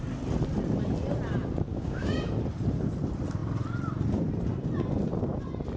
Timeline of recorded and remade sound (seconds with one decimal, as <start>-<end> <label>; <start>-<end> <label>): 0.0-1.7 recorded; 1.7-2.3 remade; 2.3-5.8 recorded

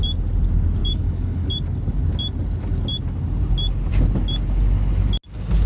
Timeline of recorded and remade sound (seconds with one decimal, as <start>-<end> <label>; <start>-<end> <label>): 0.0-0.8 recorded; 0.8-1.5 remade; 1.5-5.7 recorded

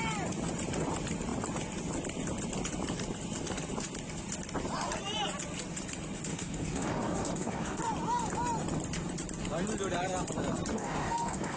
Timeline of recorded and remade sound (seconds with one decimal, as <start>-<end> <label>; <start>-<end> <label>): 0.0-6.3 recorded; 6.3-7.8 remade; 7.8-10.7 recorded; 10.7-11.6 remade

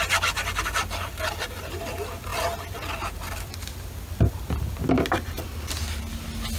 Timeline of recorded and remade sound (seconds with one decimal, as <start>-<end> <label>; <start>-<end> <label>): 0.0-6.6 recorded